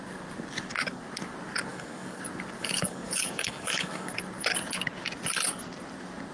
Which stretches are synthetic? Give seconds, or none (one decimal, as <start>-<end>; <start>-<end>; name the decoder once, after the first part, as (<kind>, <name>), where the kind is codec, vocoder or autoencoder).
1.7-2.2 (codec, DAC); 2.6-4.1